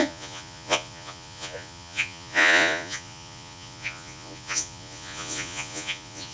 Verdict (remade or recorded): remade